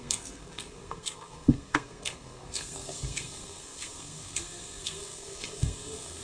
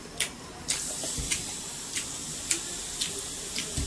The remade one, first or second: first